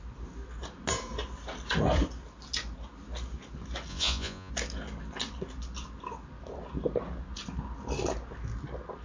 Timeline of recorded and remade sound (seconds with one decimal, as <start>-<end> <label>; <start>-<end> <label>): 0.0-3.9 recorded; 3.9-4.5 remade; 4.5-9.0 recorded